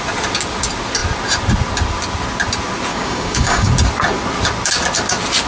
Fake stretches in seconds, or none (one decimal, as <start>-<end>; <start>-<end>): 2.9-3.7